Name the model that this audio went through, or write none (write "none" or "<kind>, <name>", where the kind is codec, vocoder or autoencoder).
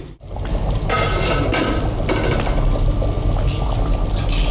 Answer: none